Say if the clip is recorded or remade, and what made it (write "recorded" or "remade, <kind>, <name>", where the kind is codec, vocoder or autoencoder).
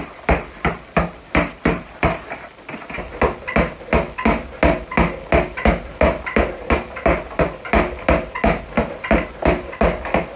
recorded